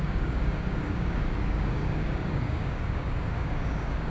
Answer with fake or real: fake